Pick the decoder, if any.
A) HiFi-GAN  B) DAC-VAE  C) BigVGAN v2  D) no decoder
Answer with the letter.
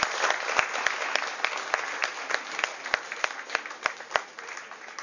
D